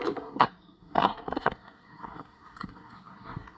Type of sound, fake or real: fake